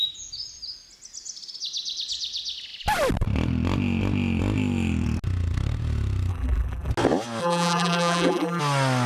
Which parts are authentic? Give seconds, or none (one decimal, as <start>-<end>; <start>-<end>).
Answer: 0.0-6.3; 6.9-7.4; 8.6-9.1